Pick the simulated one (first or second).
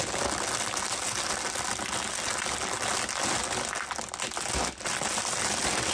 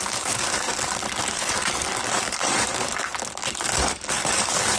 second